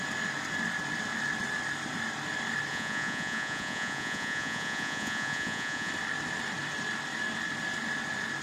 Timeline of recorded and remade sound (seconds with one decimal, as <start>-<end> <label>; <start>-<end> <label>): 0.0-2.7 recorded; 2.7-5.9 remade; 5.9-8.4 recorded